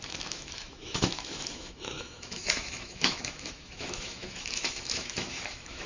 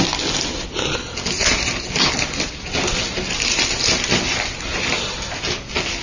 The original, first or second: second